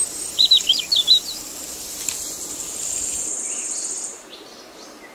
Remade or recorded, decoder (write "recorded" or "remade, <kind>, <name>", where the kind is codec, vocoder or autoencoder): recorded